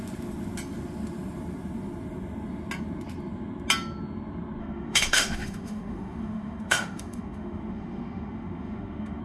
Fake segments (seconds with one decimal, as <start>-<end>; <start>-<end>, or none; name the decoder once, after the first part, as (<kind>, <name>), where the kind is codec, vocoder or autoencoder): 4.6-9.2 (autoencoder, DAC-VAE)